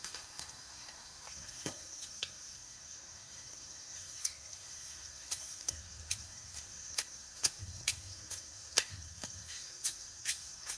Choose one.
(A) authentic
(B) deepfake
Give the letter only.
B